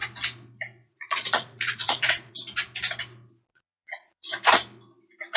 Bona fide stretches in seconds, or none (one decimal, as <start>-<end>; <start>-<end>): 0.0-0.8; 2.3-3.5; 4.3-5.4